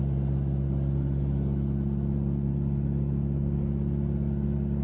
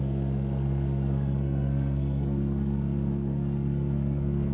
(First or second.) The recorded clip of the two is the first